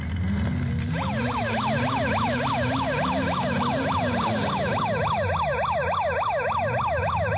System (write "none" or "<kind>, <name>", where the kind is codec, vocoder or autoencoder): none